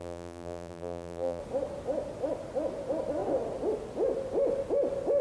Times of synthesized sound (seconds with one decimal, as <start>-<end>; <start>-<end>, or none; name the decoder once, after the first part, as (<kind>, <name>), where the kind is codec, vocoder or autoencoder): 0.0-1.4 (vocoder, BigVGAN v2)